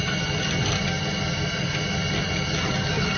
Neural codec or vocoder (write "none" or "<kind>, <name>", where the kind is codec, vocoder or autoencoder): none